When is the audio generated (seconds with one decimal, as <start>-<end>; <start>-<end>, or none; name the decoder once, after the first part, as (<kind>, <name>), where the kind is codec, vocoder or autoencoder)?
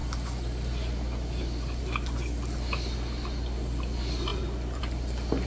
none